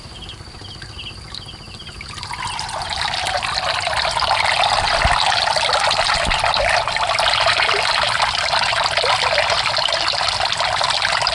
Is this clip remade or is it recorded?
recorded